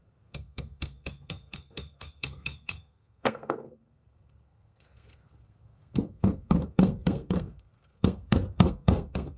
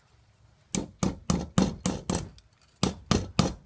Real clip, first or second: second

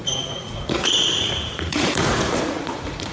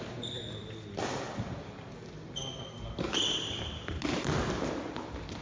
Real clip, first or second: second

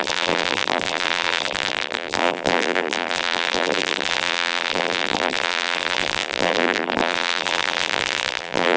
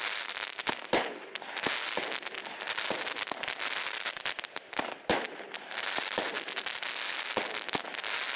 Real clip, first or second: second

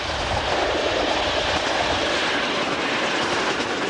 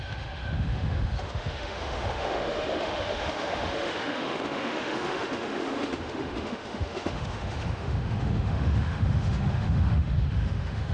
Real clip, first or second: first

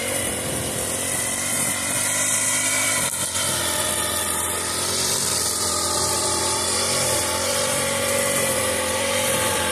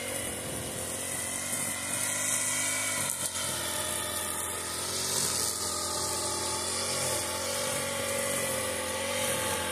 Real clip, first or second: second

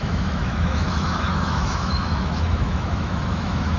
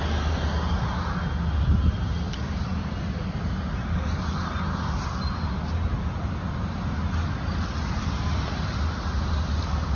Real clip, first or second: second